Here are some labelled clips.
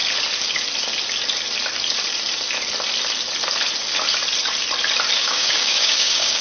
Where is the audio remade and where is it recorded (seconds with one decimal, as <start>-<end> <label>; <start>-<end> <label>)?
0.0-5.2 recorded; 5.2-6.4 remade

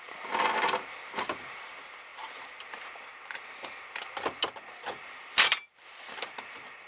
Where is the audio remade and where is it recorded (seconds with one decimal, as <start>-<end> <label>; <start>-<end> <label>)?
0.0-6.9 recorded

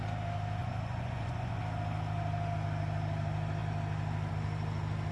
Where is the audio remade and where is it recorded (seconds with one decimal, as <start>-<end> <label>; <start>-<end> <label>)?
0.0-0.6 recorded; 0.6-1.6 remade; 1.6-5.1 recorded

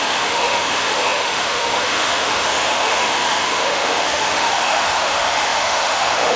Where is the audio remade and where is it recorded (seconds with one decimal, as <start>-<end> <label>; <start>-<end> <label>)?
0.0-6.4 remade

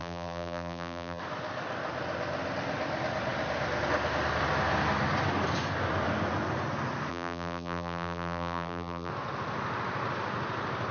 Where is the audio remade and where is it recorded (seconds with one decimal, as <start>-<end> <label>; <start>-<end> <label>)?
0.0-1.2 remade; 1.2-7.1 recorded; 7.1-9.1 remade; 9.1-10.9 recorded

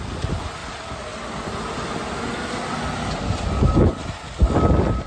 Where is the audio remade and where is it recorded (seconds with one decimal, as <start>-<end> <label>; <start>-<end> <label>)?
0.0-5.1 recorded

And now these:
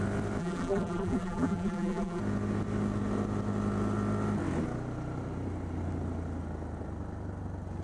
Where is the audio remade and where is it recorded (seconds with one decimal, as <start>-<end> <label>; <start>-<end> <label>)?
0.0-0.4 recorded; 0.4-2.2 remade; 2.2-7.8 recorded